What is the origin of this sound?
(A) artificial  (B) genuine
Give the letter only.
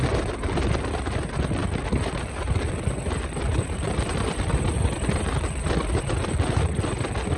B